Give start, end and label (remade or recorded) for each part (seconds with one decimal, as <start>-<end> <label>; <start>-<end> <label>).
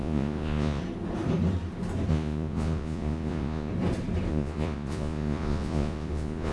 0.0-0.8 remade; 0.8-2.1 recorded; 2.1-3.7 remade; 3.7-4.3 recorded; 4.3-6.5 remade